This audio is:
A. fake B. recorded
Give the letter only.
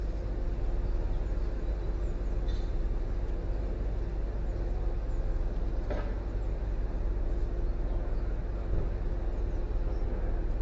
B